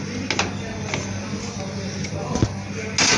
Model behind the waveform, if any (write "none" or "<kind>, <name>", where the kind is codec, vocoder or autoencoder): none